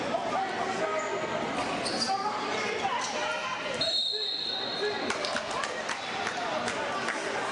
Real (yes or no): yes